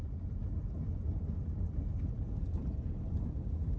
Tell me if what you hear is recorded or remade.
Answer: recorded